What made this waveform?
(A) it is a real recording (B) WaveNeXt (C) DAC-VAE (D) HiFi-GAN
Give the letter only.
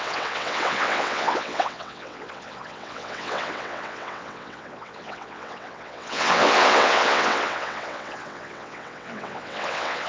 B